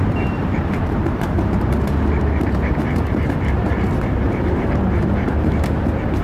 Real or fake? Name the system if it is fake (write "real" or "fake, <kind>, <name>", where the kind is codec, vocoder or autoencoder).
fake, vocoder, BigVGAN v2